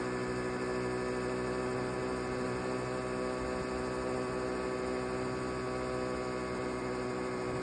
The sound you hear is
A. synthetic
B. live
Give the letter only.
B